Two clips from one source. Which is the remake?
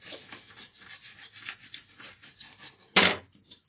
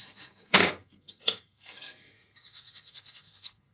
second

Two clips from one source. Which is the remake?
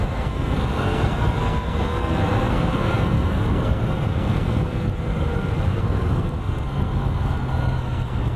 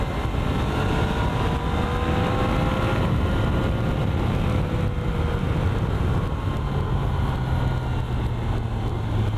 first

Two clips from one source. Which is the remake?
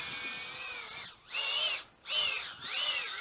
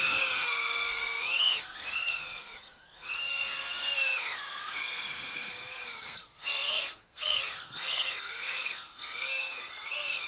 second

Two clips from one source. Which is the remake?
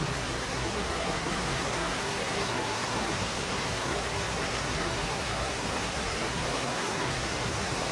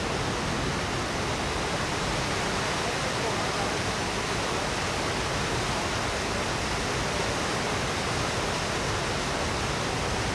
first